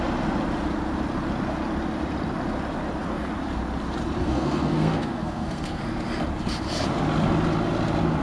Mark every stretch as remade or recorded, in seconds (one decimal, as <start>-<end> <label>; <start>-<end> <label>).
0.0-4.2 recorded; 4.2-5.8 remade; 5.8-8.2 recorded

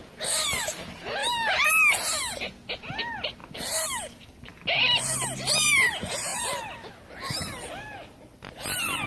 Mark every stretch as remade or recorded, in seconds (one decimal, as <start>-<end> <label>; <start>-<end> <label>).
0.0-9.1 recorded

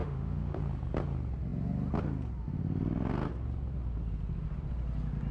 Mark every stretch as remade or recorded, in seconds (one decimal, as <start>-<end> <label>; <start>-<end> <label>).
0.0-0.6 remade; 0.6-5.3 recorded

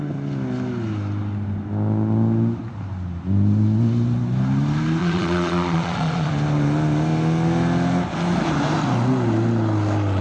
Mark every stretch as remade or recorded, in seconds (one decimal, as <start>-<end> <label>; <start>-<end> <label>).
0.0-5.0 recorded; 5.0-6.3 remade; 6.3-10.2 recorded

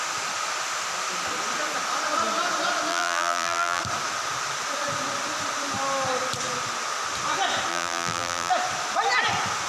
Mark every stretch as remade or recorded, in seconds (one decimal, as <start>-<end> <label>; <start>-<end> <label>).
0.0-2.9 recorded; 2.9-3.8 remade; 3.8-7.7 recorded; 7.7-8.5 remade; 8.5-9.7 recorded

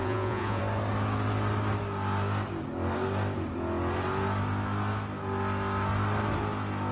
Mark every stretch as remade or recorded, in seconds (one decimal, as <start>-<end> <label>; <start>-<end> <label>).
0.0-0.6 remade; 0.6-6.9 recorded

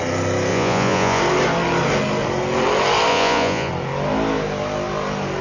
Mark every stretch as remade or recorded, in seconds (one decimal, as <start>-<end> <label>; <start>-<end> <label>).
0.0-0.5 recorded; 0.5-1.2 remade; 1.2-3.1 recorded; 3.1-3.7 remade; 3.7-5.4 recorded